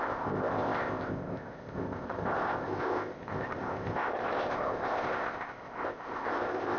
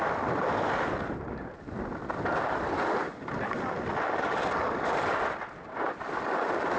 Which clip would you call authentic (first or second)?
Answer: second